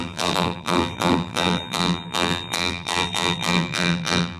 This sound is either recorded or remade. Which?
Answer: remade